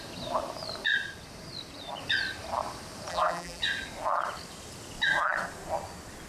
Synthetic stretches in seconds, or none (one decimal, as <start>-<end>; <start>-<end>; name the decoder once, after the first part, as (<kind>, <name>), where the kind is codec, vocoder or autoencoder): 3.1-3.6 (vocoder, BigVGAN v2)